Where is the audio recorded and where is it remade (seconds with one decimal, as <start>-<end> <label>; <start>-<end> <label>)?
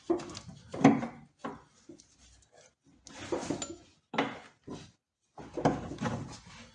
0.0-6.7 recorded